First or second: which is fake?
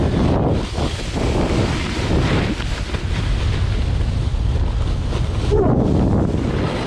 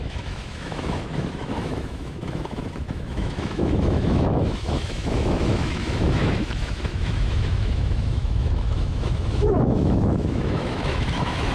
second